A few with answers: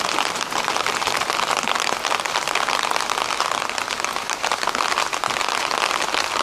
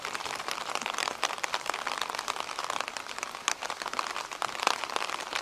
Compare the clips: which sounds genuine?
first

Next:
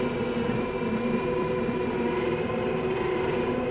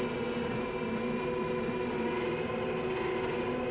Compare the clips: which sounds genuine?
second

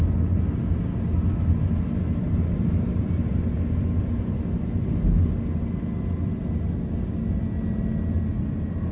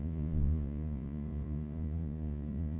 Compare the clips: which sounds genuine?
first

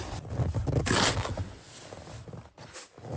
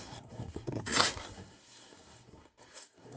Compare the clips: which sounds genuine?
first